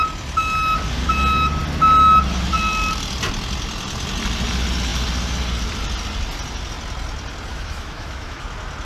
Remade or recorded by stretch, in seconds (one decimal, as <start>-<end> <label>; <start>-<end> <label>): 0.0-7.5 recorded; 7.5-8.4 remade; 8.4-8.8 recorded